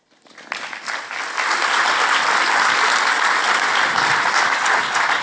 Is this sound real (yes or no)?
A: yes